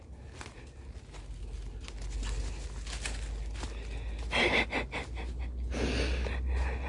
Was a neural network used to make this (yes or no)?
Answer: no